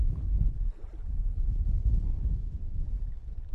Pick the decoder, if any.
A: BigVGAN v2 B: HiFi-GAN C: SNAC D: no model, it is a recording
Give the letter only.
D